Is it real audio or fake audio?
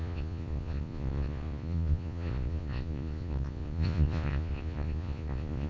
fake